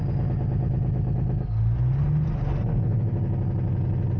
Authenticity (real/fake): real